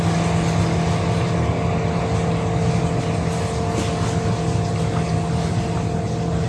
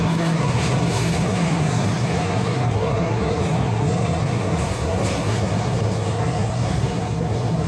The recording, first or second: first